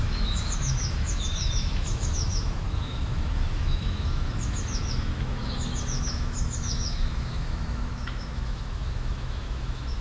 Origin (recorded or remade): remade